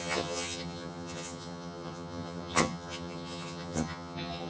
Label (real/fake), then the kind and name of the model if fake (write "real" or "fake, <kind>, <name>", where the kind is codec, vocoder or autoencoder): fake, vocoder, HiFi-GAN